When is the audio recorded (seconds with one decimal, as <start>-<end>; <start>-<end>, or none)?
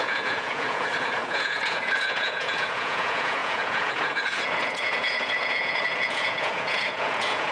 none